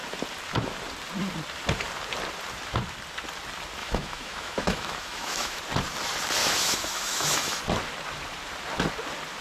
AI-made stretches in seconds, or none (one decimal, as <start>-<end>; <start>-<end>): 3.8-5.6; 6.4-7.6